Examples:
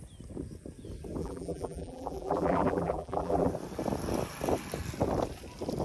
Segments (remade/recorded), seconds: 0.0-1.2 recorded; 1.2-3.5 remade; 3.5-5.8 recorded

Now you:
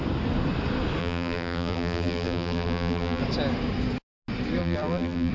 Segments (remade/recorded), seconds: 0.0-1.0 recorded; 1.0-3.2 remade; 3.2-4.6 recorded; 4.6-5.3 remade

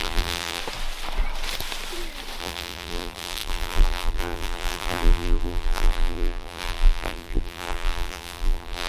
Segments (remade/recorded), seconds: 0.0-0.6 remade; 0.6-2.4 recorded; 2.4-8.9 remade

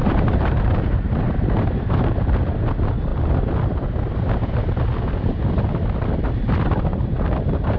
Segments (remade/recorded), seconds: 0.0-2.4 remade; 2.4-6.9 recorded; 6.9-7.8 remade

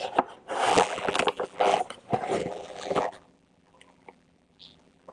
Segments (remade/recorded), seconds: 0.0-0.7 recorded; 0.7-1.8 remade; 1.8-2.4 recorded; 2.4-5.1 remade

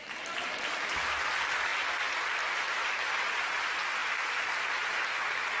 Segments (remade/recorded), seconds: 0.0-5.6 remade

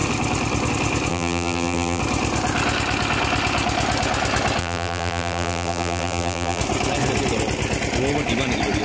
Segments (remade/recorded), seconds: 0.0-1.1 recorded; 1.1-2.0 remade; 2.0-4.6 recorded; 4.6-6.6 remade; 6.6-8.8 recorded